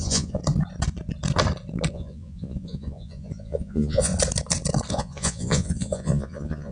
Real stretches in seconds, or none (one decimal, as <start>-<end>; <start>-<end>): 0.4-1.9; 4.1-4.9